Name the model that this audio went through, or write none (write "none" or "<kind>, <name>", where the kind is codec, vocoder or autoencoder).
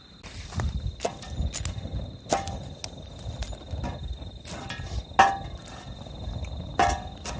none